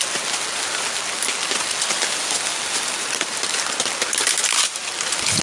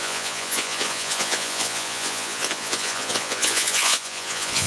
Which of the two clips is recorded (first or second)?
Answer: first